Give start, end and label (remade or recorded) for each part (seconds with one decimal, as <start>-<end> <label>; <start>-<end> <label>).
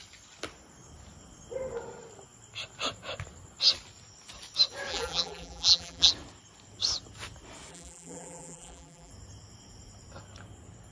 0.0-4.9 recorded; 4.9-6.1 remade; 6.1-7.7 recorded; 7.7-9.1 remade; 9.1-10.9 recorded